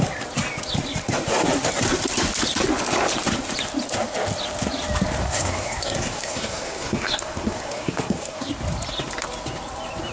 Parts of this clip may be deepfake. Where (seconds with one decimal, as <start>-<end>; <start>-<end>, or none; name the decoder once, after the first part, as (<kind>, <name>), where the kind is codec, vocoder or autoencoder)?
5.2-8.5 (codec, SNAC)